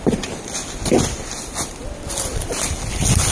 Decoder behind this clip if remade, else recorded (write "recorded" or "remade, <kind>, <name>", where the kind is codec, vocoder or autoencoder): recorded